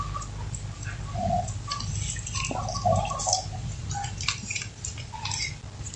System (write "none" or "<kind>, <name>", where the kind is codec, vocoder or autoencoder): none